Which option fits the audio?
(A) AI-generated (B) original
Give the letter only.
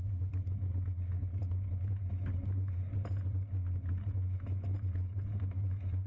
B